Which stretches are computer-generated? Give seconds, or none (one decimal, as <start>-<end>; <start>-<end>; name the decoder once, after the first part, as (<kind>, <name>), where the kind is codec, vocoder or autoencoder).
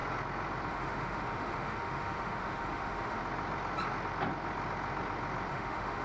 0.7-3.2 (autoencoder, DAC-VAE); 5.5-6.0